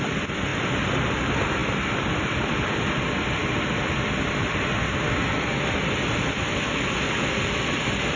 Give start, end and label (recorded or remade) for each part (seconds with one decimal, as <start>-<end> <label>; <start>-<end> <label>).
0.0-8.2 recorded